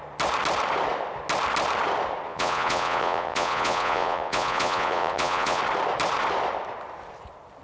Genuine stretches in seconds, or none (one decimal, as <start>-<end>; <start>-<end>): 0.0-2.3; 5.6-7.6